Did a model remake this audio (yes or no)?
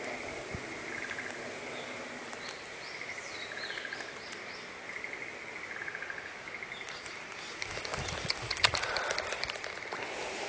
no